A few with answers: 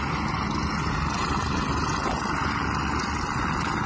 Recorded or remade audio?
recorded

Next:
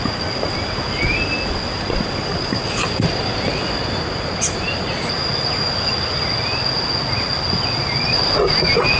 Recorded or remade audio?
recorded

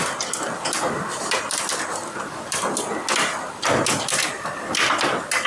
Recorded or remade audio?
recorded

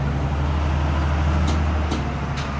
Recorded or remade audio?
recorded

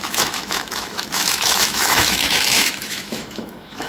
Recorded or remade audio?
remade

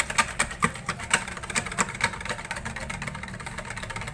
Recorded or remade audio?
recorded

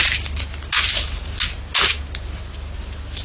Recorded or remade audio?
recorded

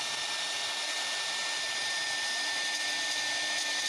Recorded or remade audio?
recorded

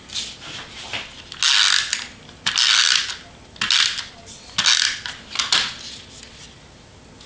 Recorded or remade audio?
recorded